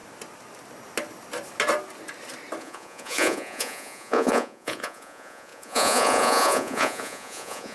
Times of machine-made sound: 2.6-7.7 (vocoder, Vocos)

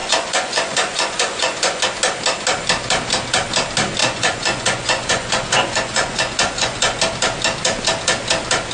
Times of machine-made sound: 0.0-1.8 (vocoder, Vocos); 4.0-7.0